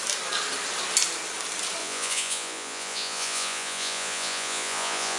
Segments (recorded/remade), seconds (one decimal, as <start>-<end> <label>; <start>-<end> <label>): 0.0-1.8 recorded; 1.8-5.2 remade